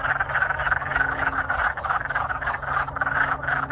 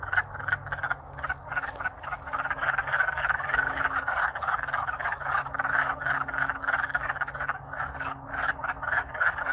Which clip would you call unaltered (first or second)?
first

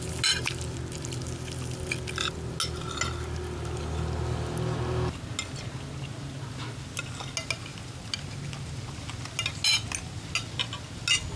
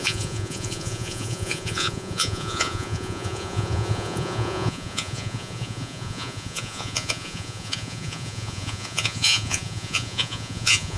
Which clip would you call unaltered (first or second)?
first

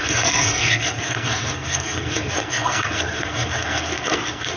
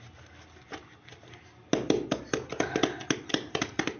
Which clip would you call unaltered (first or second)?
second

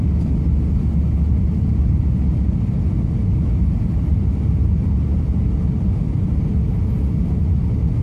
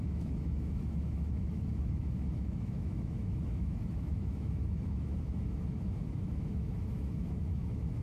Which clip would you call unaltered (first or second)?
first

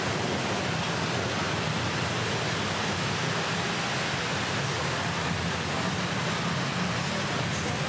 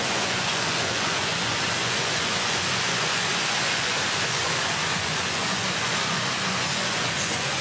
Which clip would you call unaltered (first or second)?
first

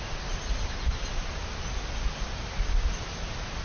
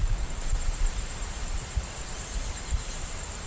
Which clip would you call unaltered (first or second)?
first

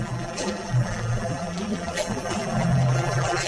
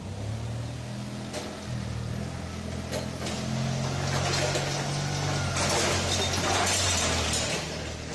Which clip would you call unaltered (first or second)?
second